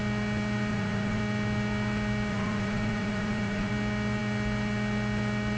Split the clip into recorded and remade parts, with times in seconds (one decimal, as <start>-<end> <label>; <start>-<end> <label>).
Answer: 0.0-0.7 recorded; 0.7-1.2 remade; 1.2-2.3 recorded; 2.3-3.7 remade; 3.7-5.6 recorded

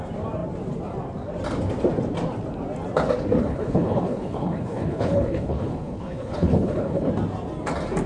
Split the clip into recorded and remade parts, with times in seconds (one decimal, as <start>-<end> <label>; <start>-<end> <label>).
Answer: 0.0-3.4 recorded; 3.4-7.1 remade; 7.1-8.1 recorded

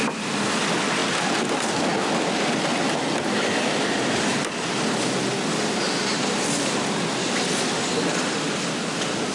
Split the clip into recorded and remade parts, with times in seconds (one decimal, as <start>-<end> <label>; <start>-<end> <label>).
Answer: 0.0-9.3 recorded